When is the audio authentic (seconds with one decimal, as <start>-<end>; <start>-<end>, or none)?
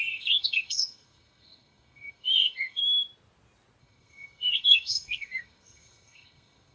2.8-3.8